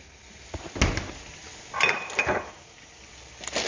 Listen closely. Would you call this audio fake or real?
real